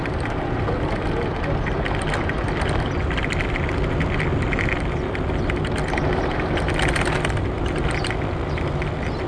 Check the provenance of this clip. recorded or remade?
recorded